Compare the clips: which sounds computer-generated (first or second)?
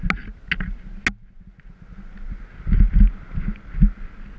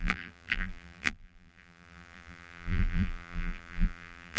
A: second